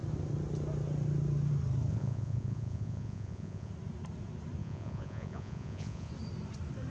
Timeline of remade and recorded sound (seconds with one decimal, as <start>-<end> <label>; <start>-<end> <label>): 0.0-1.9 recorded; 1.9-3.7 remade; 3.7-4.6 recorded; 4.6-6.1 remade; 6.1-6.9 recorded